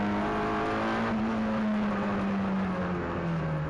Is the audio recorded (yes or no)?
yes